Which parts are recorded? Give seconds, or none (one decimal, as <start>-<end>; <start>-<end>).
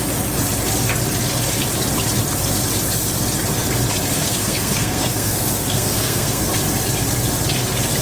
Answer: 0.0-4.2; 6.5-8.0